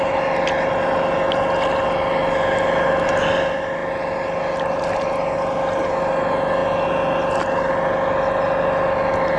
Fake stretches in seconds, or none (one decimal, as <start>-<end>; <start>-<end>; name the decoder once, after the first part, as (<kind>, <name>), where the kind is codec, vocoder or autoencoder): none